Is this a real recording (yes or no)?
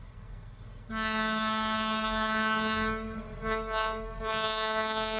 no